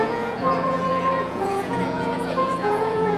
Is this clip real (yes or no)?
no